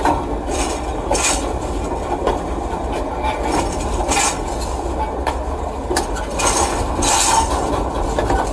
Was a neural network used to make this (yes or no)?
no